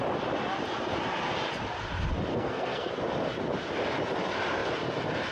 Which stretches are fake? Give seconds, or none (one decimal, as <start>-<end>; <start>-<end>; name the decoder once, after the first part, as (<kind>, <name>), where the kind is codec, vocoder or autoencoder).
2.3-2.9 (codec, SNAC)